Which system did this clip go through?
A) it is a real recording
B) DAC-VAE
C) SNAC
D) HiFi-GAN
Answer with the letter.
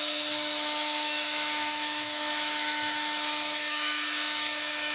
B